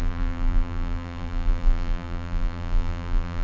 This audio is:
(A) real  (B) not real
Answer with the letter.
B